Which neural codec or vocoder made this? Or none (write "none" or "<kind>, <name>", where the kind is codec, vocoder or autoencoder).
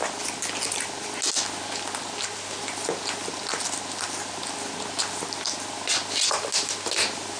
none